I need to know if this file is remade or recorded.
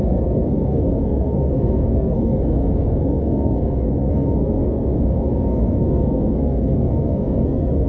remade